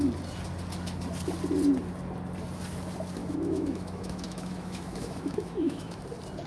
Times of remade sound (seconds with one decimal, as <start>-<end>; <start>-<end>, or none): 3.2-6.0